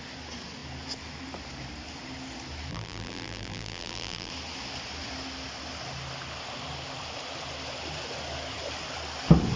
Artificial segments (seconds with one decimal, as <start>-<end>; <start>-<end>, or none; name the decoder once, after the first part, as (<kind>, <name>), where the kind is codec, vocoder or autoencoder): 2.7-4.3 (vocoder, BigVGAN v2)